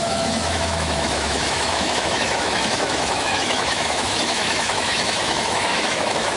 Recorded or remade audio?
remade